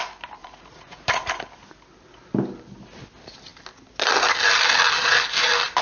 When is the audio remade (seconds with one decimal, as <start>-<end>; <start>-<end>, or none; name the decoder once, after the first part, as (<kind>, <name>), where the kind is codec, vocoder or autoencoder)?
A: 0.4-1.3 (vocoder, Vocos)